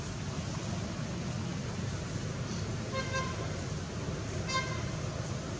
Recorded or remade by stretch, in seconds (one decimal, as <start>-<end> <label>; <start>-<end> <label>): 0.0-5.6 recorded